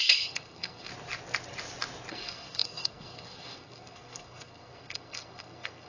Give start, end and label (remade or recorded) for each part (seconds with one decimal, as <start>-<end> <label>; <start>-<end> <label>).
0.0-0.9 remade; 0.9-2.1 recorded; 2.1-5.9 remade